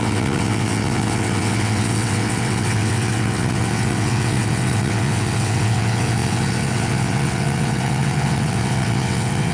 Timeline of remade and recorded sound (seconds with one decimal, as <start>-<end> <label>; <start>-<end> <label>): 0.0-9.5 remade